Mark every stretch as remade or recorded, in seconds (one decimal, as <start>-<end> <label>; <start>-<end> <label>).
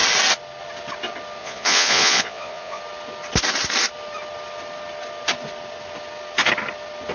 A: 0.0-1.4 recorded; 1.4-2.8 remade; 2.8-7.1 recorded